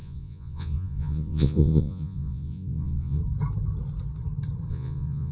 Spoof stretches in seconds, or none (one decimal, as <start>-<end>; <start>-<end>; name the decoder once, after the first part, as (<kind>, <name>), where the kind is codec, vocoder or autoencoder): 0.0-3.2 (vocoder, Vocos); 4.7-5.3